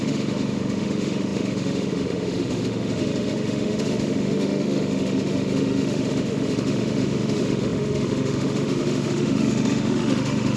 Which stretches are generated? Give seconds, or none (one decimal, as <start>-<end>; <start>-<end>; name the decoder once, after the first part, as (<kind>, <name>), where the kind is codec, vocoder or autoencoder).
0.0-10.6 (autoencoder, DAC-VAE)